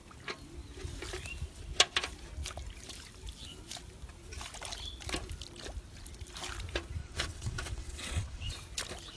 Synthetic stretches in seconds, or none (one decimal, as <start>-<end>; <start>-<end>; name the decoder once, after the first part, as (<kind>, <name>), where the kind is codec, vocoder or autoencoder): 7.0-8.5 (vocoder, WaveNeXt)